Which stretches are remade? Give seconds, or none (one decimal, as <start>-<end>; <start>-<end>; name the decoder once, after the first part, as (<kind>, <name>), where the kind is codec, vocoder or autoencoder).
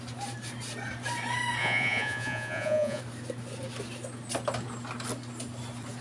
1.6-3.0 (vocoder, Vocos)